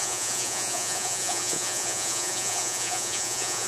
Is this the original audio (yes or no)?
no